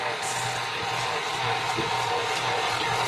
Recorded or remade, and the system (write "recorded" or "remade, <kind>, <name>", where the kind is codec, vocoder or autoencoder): remade, vocoder, BigVGAN v2